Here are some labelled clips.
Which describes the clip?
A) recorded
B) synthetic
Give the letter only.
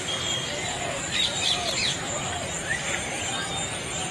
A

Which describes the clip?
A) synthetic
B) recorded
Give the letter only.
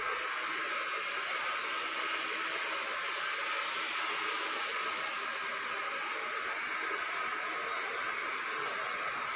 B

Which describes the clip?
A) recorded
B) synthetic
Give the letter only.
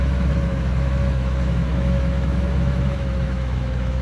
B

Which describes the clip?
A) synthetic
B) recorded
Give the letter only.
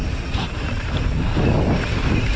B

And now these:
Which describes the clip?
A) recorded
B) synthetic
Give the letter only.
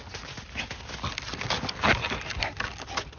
A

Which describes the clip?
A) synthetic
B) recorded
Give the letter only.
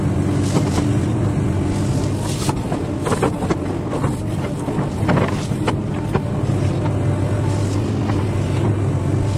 B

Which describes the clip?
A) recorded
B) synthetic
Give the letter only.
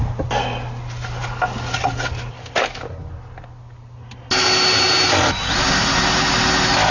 A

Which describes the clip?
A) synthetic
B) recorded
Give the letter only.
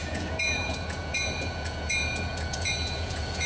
A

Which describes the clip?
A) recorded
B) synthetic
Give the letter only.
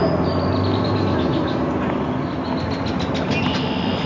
A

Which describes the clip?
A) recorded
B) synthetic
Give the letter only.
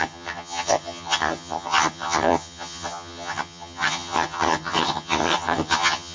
B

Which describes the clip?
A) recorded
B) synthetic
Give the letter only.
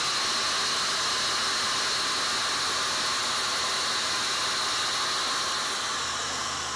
A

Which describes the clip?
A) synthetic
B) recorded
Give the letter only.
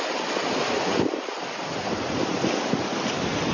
B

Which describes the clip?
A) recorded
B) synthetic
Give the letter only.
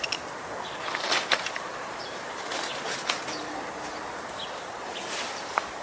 B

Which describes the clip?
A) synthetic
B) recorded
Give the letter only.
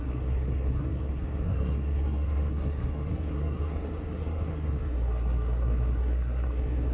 A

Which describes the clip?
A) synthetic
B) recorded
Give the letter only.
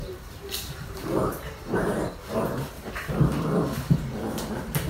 A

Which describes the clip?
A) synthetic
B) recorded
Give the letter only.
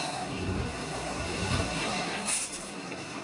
A